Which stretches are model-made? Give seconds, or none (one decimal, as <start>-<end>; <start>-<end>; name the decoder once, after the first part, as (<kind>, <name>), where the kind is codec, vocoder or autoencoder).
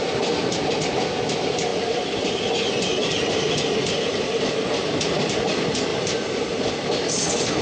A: 1.7-4.4 (vocoder, BigVGAN v2); 5.9-6.7